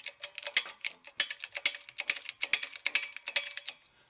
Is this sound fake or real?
real